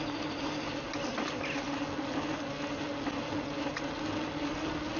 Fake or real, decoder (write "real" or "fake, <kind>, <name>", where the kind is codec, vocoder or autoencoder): real